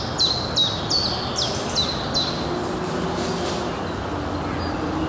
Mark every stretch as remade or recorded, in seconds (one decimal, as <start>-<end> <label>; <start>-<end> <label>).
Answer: 0.0-5.1 recorded